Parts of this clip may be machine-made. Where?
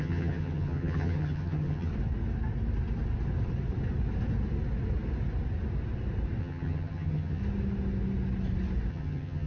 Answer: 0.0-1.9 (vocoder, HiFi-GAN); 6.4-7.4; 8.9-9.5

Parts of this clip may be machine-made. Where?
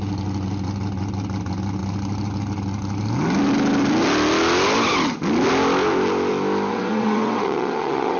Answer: 6.7-8.2 (vocoder, WaveNeXt)